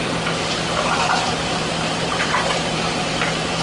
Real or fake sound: fake